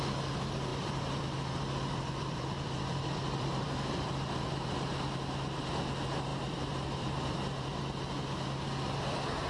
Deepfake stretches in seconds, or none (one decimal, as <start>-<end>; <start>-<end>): 0.7-4.7; 6.3-7.8